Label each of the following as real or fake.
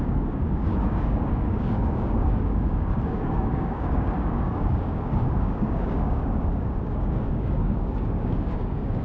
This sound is fake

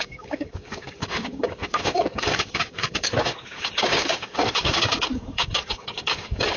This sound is fake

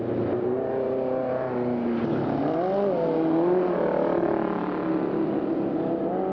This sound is real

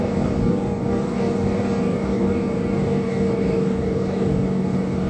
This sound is fake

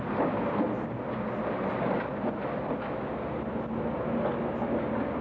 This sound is real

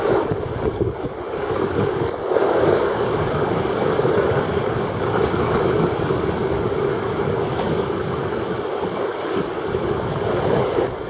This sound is fake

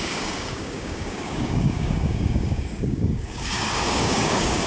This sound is fake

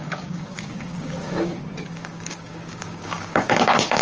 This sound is fake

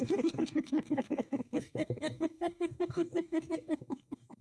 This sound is fake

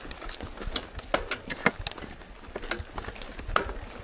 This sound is real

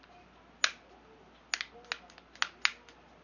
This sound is real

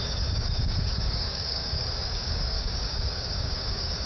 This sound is fake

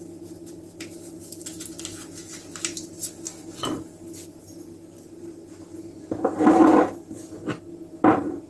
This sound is real